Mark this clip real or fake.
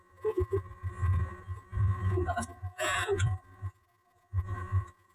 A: fake